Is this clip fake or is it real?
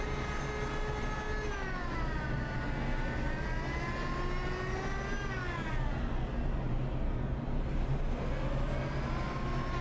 real